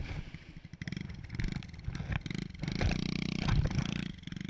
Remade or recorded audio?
recorded